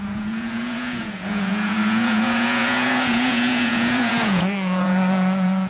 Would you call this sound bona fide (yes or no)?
no